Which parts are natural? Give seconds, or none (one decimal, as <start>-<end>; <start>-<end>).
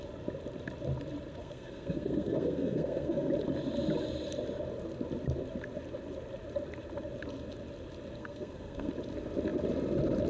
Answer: 0.0-1.4; 3.3-8.2; 8.9-10.3